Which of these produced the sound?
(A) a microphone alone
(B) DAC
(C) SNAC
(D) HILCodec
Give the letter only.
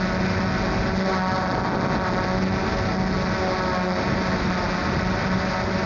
A